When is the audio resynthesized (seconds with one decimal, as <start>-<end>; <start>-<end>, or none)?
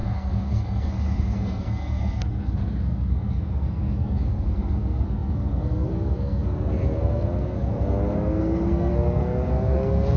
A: 0.0-10.2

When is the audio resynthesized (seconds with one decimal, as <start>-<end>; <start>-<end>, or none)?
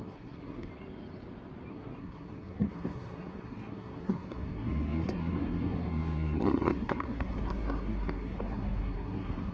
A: 0.0-0.7; 1.7-9.5